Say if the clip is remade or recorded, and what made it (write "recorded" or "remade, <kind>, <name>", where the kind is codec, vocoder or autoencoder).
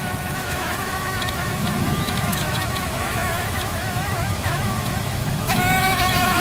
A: remade, autoencoder, DAC-VAE